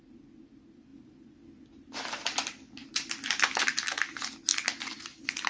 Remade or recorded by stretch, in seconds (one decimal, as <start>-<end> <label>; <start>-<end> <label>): 0.0-5.5 recorded

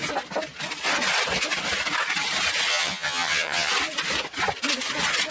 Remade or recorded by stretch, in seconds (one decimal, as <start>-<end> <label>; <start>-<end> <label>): 0.0-2.7 recorded; 2.7-3.7 remade; 3.7-5.3 recorded

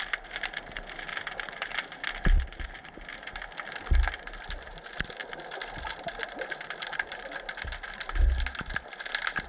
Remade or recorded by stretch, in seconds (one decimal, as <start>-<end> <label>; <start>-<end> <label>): 0.0-9.5 recorded

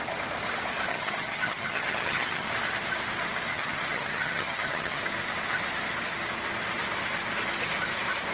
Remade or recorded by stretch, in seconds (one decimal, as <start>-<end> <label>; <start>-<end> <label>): 0.0-0.9 recorded; 0.9-2.5 remade; 2.5-3.5 recorded; 3.5-5.0 remade; 5.0-8.3 recorded

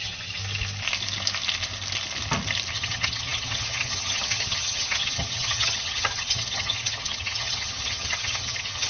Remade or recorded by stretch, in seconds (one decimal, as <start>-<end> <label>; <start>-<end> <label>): 0.0-0.4 remade; 0.4-2.7 recorded; 2.7-8.9 remade

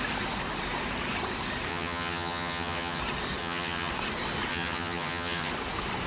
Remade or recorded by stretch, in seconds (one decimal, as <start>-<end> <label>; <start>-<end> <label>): 0.0-1.7 recorded; 1.7-3.0 remade; 3.0-3.4 recorded; 3.4-3.9 remade; 3.9-4.5 recorded; 4.5-5.5 remade; 5.5-6.1 recorded

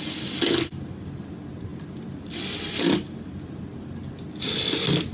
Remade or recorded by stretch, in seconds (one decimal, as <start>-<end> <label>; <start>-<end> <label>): 0.0-5.1 recorded

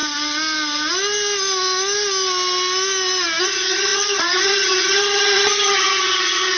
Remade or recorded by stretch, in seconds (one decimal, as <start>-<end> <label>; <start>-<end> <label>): 0.0-3.4 recorded; 3.4-6.6 remade